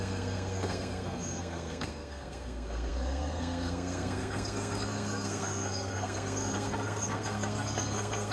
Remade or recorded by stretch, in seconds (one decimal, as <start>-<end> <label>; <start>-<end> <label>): 0.0-8.3 remade